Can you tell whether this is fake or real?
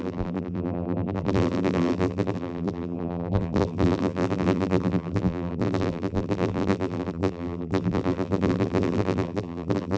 fake